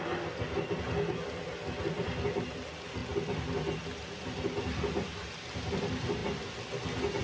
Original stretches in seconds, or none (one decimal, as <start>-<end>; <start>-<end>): 0.0-7.2